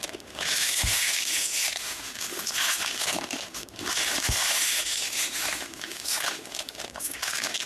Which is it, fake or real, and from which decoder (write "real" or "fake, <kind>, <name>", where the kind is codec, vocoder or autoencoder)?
fake, autoencoder, DAC-VAE